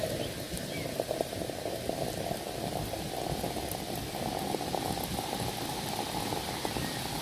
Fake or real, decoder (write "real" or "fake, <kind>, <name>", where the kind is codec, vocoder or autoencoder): real